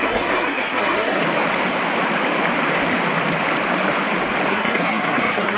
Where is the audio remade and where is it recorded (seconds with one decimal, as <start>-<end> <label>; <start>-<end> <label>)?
0.0-1.2 remade; 1.2-4.5 recorded; 4.5-5.6 remade